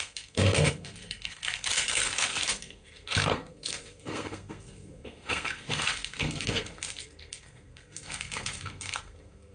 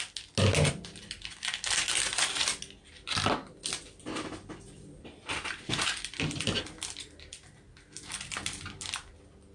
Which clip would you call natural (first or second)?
second